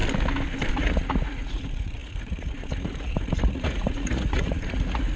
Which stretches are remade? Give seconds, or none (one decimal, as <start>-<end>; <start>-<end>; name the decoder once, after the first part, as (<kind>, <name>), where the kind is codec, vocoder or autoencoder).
0.7-5.2 (vocoder, Vocos)